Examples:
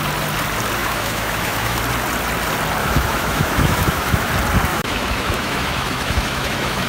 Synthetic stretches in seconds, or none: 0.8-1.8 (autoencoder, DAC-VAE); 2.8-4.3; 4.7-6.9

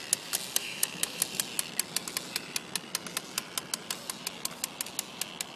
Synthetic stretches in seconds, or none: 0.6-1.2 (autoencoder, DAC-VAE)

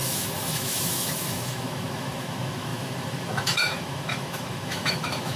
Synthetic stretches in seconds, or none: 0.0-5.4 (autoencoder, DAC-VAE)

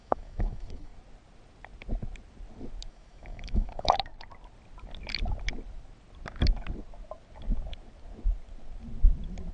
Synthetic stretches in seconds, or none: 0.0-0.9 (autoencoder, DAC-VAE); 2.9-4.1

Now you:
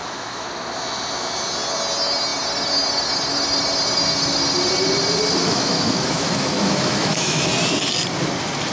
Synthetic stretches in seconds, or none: 0.0-0.5 (autoencoder, DAC-VAE); 5.4-7.5

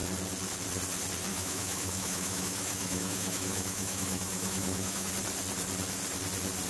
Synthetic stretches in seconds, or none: 1.3-5.1 (autoencoder, DAC-VAE)

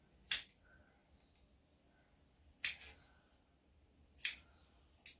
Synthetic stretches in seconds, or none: none